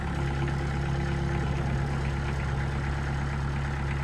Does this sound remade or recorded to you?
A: recorded